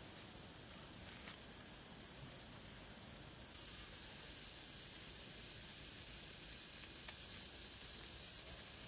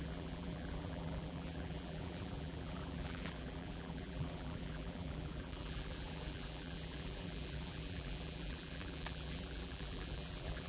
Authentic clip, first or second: first